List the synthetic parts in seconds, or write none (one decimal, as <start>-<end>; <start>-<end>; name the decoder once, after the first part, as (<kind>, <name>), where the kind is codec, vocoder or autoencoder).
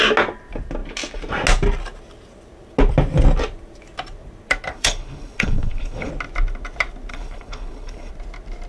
4.7-6.1 (codec, HILCodec); 7.1-8.1